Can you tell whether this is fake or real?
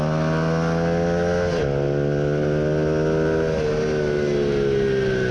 real